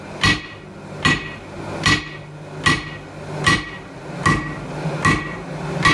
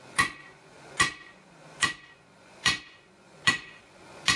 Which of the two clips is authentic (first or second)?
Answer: first